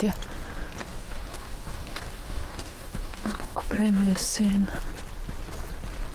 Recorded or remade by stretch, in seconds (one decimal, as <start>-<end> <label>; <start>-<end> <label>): 0.0-0.8 recorded; 0.8-4.5 remade; 4.5-6.1 recorded